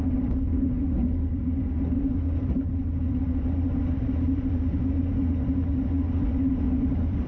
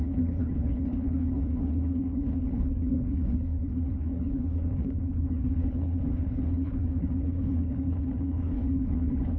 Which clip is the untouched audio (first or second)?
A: first